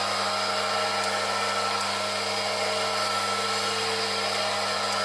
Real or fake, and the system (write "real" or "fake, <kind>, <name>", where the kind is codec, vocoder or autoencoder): real